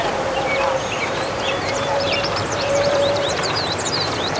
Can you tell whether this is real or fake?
fake